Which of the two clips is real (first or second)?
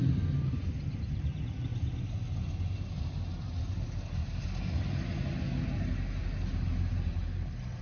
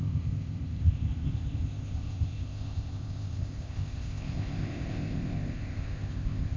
first